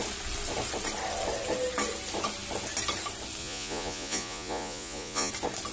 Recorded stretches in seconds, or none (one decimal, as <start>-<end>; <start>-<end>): 0.0-3.4; 5.3-5.7